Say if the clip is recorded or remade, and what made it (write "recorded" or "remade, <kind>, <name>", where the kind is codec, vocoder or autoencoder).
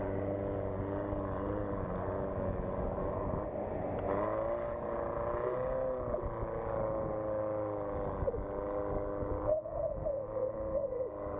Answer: recorded